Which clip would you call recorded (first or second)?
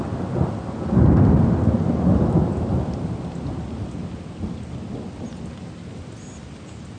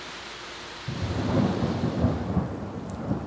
first